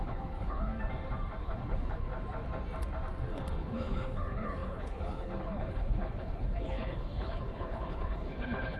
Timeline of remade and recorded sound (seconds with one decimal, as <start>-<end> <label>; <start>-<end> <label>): 0.0-0.7 remade; 0.7-1.4 recorded; 1.4-2.1 remade; 2.1-3.3 recorded; 3.3-8.8 remade